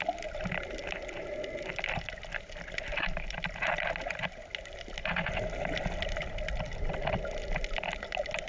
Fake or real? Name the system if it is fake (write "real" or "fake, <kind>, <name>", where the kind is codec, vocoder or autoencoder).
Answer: real